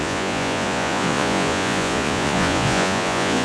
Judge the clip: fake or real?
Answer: fake